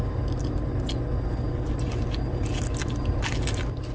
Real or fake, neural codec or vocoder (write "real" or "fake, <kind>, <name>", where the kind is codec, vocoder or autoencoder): real